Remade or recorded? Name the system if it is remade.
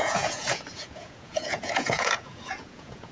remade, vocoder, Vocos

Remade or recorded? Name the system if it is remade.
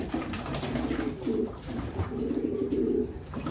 recorded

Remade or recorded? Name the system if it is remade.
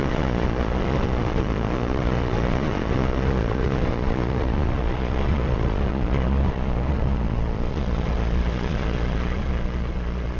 remade, vocoder, Vocos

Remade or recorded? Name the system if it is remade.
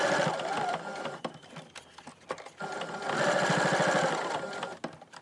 recorded